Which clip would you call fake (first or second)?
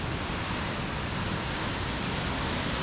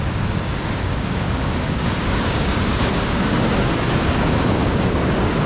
second